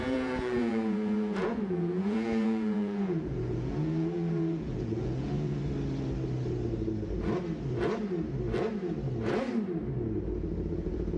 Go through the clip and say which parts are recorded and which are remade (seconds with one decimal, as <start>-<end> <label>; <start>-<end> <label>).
0.0-5.6 remade; 5.6-10.7 recorded; 10.7-11.2 remade